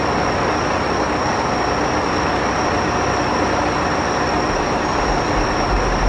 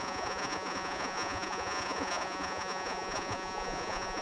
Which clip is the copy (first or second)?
second